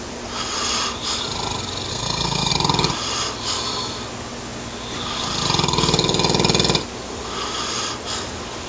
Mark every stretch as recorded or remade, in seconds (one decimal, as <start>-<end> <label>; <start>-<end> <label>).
0.0-1.9 recorded; 1.9-2.5 remade; 2.5-8.7 recorded